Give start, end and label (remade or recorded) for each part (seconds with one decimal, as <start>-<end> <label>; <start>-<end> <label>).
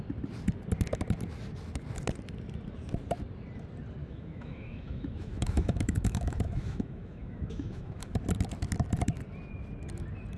0.0-4.0 recorded; 4.0-8.1 remade; 8.1-10.4 recorded